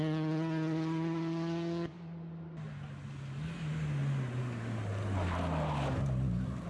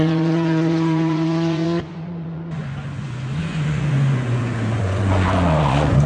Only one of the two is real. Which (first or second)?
first